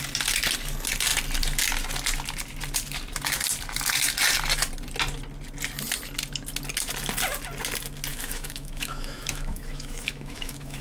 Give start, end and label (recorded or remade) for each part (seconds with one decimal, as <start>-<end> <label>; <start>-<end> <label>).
0.0-8.1 recorded; 8.1-10.8 remade